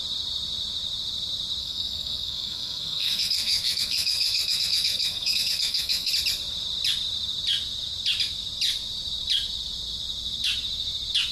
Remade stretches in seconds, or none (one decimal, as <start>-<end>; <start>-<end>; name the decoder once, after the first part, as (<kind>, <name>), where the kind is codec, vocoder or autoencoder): 1.6-6.1 (codec, SNAC)